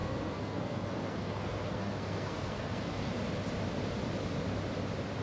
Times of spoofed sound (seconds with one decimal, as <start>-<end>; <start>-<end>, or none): 0.0-3.1